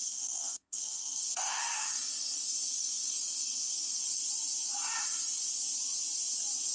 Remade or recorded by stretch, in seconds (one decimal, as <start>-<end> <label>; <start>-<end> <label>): 0.0-4.0 remade; 4.0-6.7 recorded

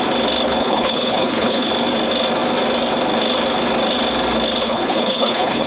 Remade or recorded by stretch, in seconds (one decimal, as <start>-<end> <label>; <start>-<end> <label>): 0.0-0.6 recorded; 0.6-1.7 remade; 1.7-4.6 recorded; 4.6-5.7 remade

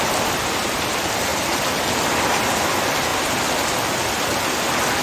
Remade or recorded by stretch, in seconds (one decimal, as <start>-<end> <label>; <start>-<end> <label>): 0.0-5.0 recorded

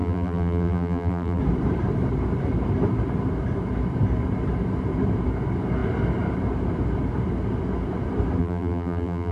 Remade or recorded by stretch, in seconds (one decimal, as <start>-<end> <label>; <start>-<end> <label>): 0.0-1.4 remade; 1.4-8.4 recorded; 8.4-9.3 remade

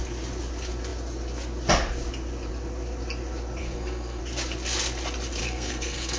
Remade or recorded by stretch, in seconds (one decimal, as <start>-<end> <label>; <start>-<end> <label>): 0.0-3.6 recorded; 3.6-4.2 remade; 4.2-5.4 recorded; 5.4-6.2 remade

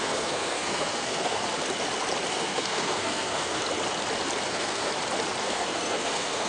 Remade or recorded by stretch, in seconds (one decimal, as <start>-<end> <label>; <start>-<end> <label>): 0.0-1.4 remade; 1.4-2.3 recorded; 2.3-3.6 remade; 3.6-4.5 recorded; 4.5-4.9 remade; 4.9-5.4 recorded; 5.4-6.5 remade

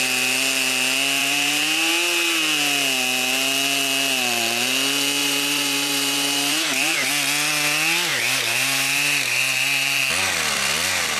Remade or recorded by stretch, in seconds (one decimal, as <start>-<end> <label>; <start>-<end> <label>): 0.0-1.2 recorded; 1.2-1.9 remade; 1.9-5.2 recorded; 5.2-7.1 remade; 7.1-8.1 recorded; 8.1-10.0 remade; 10.0-11.2 recorded